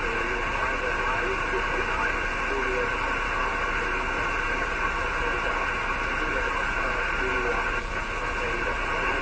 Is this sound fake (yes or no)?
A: no